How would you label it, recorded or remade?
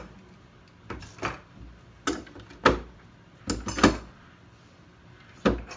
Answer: recorded